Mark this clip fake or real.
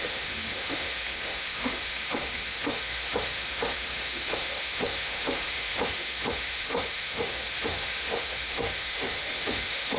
fake